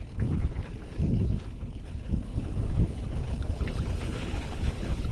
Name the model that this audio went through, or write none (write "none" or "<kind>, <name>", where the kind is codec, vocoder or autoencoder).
codec, HILCodec